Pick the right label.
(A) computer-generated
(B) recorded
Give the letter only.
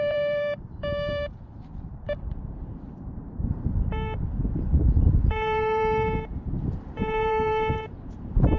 A